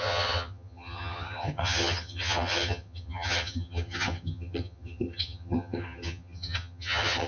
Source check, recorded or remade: remade